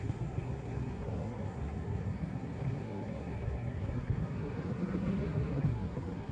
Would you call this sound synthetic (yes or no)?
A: yes